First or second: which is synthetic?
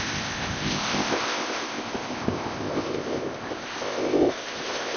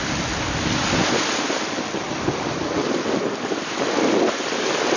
first